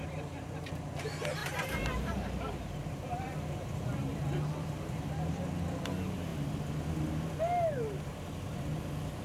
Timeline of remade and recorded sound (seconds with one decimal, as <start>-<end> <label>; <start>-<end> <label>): 0.0-1.0 remade; 1.0-1.4 recorded; 1.4-5.1 remade; 5.1-9.2 recorded